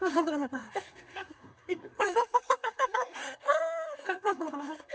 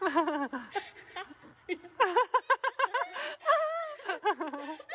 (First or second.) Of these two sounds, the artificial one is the first